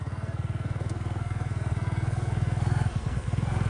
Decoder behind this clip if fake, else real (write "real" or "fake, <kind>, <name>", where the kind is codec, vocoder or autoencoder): fake, codec, SNAC